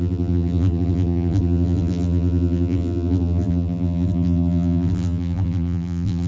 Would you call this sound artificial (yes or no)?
yes